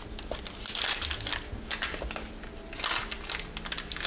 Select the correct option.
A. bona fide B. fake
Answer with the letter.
A